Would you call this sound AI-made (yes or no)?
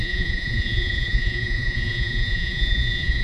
yes